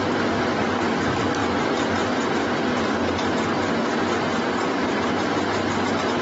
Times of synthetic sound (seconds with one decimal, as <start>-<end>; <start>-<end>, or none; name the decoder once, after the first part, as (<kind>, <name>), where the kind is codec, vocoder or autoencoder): none